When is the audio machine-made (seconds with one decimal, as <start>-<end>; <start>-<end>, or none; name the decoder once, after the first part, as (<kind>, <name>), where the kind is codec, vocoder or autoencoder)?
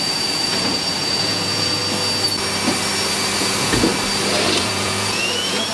0.0-1.8 (vocoder, Vocos); 3.4-3.9; 4.6-5.7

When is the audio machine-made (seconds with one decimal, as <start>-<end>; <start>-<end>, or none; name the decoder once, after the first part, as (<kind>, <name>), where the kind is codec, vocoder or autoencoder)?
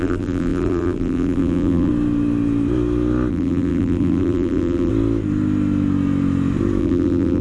0.0-1.9 (vocoder, BigVGAN v2); 3.3-4.9; 6.8-7.4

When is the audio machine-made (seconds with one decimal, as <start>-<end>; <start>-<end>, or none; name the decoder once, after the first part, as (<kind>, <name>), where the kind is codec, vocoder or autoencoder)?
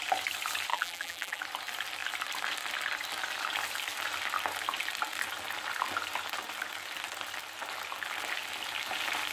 0.7-1.4 (vocoder, BigVGAN v2)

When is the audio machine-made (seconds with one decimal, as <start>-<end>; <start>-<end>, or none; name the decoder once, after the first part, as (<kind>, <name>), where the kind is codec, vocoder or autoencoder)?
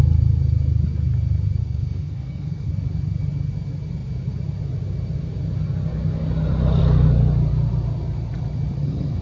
1.6-2.7 (codec, SNAC)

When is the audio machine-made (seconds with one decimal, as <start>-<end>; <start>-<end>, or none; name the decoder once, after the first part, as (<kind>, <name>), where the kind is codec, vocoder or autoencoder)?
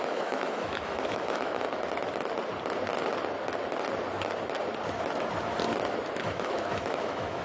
0.0-1.8 (autoencoder, DAC-VAE); 6.2-7.4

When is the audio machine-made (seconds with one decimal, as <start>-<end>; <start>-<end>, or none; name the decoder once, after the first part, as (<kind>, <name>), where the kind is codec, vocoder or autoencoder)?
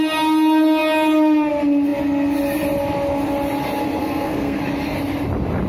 4.0-4.6 (codec, SNAC)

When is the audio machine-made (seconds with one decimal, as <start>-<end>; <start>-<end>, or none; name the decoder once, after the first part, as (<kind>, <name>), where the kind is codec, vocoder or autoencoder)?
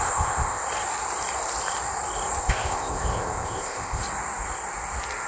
0.0-0.6 (codec, ZipCodec); 2.4-4.0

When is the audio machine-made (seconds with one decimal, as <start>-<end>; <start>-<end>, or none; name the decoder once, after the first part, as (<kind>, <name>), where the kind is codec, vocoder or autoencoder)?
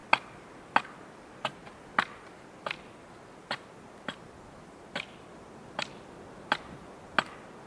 none